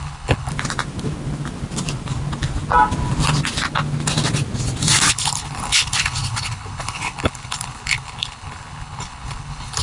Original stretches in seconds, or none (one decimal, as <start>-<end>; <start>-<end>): 0.5-5.1